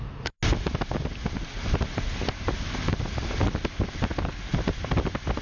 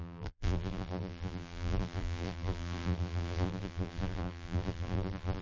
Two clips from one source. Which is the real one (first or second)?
first